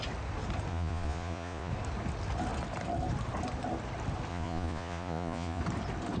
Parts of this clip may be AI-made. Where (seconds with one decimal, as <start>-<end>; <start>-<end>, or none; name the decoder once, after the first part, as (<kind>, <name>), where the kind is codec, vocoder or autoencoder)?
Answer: 0.7-1.7 (vocoder, Vocos); 4.3-5.6